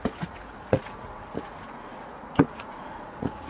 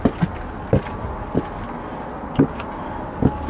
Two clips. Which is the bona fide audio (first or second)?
second